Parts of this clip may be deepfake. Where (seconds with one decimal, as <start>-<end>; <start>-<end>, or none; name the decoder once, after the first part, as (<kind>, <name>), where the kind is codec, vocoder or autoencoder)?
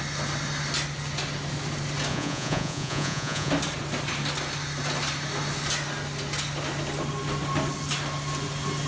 2.1-3.5 (vocoder, Vocos)